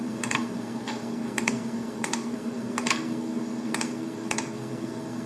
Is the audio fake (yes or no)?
yes